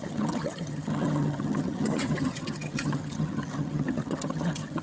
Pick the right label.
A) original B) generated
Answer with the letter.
B